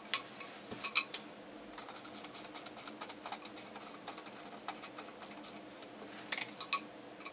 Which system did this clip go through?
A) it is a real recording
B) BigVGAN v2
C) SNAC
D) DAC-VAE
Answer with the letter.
A